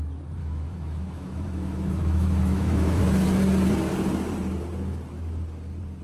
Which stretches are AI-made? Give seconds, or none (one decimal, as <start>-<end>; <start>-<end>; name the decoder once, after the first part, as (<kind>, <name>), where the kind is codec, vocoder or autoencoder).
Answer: 0.4-3.0 (autoencoder, DAC-VAE)